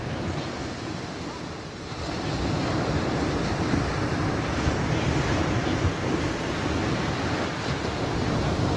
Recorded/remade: recorded